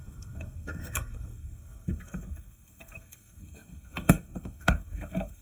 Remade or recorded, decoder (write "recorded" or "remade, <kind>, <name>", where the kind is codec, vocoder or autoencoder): remade, codec, SNAC